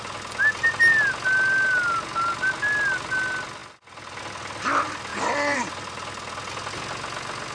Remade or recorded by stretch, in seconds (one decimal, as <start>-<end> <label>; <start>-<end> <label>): 0.0-7.5 recorded